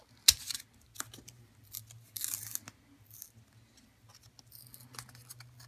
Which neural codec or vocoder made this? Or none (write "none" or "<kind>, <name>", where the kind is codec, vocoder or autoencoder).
none